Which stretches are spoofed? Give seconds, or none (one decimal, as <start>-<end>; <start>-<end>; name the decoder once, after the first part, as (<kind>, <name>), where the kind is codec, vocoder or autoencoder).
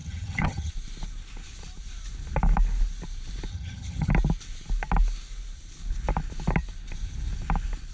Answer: 0.0-0.7 (vocoder, HiFi-GAN); 3.5-4.1